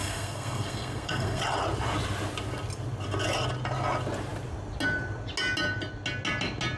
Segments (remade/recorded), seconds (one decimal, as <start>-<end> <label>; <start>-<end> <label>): 0.0-1.4 remade; 1.4-6.8 recorded